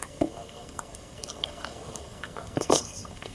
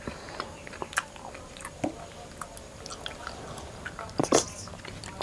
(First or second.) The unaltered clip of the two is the second